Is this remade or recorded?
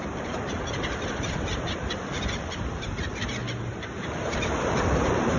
remade